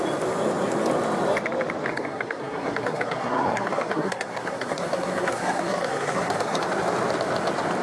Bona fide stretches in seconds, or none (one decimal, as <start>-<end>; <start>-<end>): 0.0-1.9; 6.6-7.8